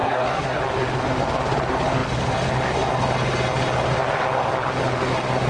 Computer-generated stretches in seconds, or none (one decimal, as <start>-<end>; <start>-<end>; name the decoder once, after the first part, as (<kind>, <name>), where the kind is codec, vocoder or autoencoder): 0.0-0.6 (codec, SNAC)